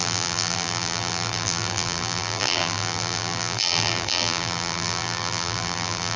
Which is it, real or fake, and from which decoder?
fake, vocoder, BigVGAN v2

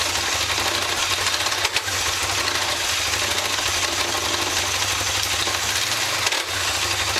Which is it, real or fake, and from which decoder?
real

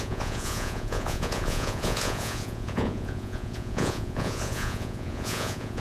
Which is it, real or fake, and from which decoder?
fake, vocoder, Vocos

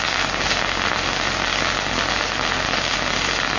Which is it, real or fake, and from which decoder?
real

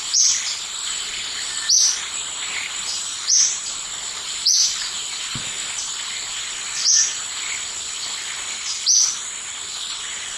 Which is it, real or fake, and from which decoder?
real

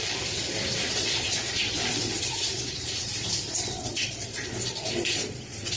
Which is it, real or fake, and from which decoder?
fake, vocoder, Vocos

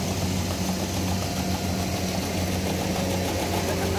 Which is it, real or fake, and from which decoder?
real